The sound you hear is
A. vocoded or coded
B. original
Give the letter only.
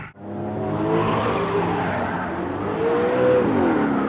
B